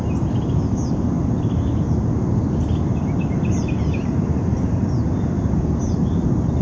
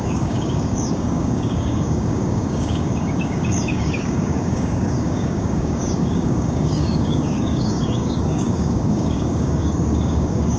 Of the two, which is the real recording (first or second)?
first